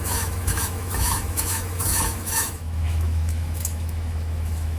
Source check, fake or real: fake